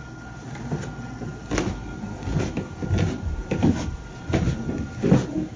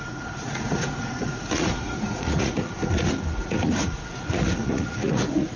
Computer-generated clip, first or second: second